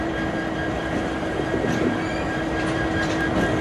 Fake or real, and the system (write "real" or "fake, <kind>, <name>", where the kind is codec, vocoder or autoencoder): fake, vocoder, BigVGAN v2